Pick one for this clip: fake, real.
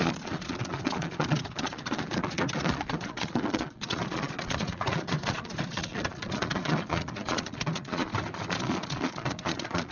fake